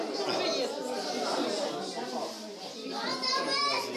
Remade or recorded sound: recorded